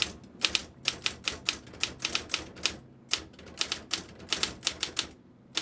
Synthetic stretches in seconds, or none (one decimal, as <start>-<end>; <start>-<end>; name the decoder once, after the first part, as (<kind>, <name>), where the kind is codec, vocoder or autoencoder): none